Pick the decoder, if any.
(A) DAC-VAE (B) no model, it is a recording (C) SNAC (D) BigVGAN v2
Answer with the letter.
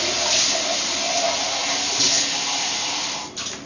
B